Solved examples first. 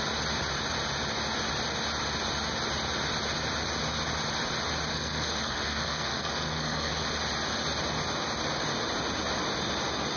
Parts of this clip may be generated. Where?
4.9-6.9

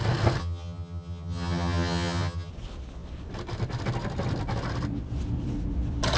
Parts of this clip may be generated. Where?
0.4-2.5